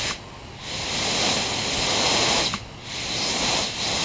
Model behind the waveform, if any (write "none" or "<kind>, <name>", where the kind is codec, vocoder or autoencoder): none